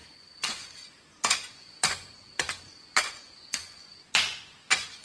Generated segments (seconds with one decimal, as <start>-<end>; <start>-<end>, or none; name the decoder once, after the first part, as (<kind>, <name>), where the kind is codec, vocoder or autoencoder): 0.0-5.0 (vocoder, Vocos)